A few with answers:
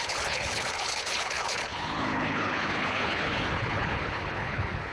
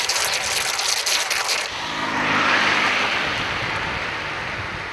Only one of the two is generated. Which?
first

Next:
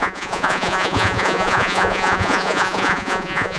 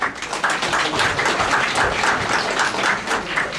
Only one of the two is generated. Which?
first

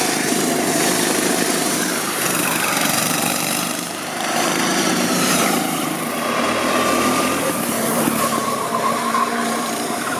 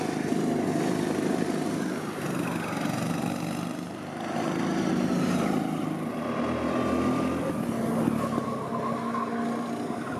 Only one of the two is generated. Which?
first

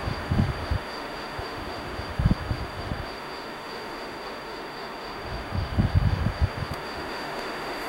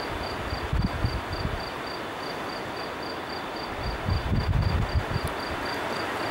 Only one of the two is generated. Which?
first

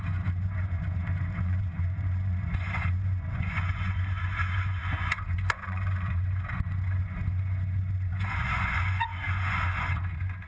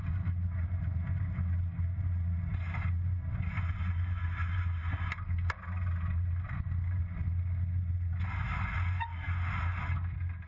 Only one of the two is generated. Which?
first